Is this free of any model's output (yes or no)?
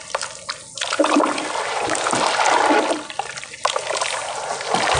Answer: yes